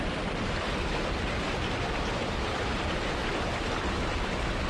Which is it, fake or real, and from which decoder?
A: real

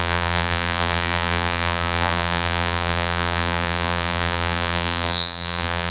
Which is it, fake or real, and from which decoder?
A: fake, vocoder, BigVGAN v2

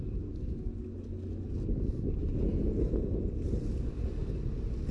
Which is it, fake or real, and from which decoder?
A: real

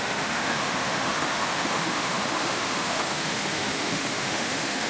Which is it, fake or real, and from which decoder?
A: fake, autoencoder, DAC-VAE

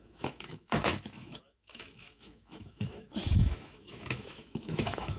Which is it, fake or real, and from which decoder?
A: fake, autoencoder, DAC-VAE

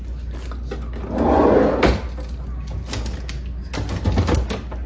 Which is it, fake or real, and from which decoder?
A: real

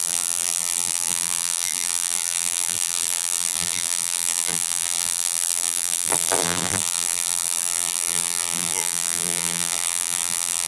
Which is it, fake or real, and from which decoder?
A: fake, vocoder, BigVGAN v2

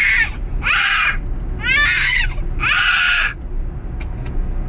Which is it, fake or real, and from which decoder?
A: real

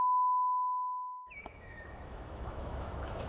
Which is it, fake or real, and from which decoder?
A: fake, autoencoder, DAC-VAE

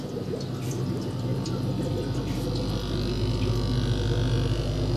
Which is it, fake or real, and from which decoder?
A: real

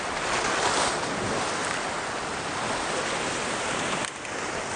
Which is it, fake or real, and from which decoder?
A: real